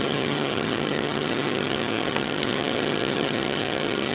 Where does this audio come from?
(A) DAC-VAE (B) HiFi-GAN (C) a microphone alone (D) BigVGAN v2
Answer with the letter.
B